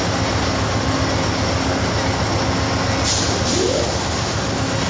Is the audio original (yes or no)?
yes